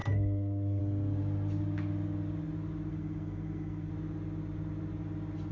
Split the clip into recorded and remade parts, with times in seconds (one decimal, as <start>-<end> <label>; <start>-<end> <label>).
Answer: 0.0-0.8 remade; 0.8-2.9 recorded; 2.9-3.9 remade; 3.9-5.5 recorded